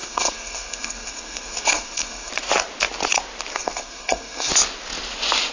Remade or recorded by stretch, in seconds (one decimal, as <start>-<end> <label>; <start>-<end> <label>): 0.0-2.3 remade; 2.3-3.5 recorded; 3.5-4.5 remade; 4.5-5.5 recorded